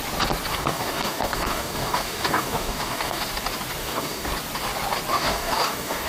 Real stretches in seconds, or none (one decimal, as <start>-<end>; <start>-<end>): 0.0-0.5; 3.2-3.8; 4.3-5.1